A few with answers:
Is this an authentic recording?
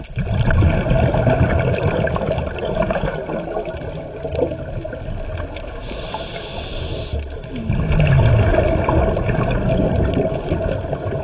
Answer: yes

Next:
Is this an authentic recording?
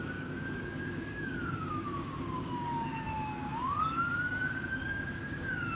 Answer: no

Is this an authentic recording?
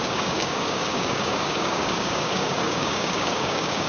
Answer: no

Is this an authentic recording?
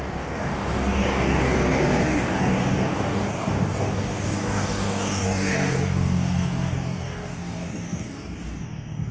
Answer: no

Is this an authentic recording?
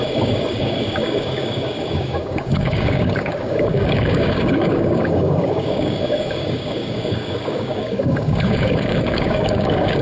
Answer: no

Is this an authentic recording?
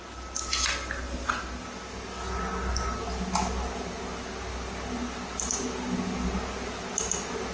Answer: yes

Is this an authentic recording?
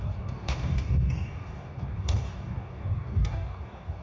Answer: no